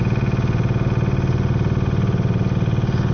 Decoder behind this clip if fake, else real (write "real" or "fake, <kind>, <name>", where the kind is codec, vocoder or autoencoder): real